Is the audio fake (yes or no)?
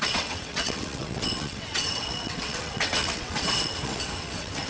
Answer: yes